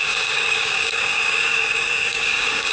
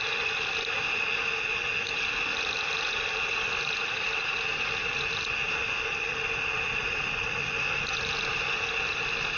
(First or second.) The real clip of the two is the second